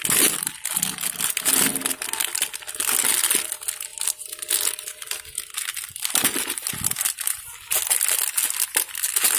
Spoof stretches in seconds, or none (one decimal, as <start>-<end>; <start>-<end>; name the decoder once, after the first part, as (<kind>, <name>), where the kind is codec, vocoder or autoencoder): none